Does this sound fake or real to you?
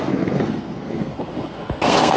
fake